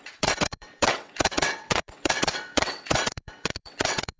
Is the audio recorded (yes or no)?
no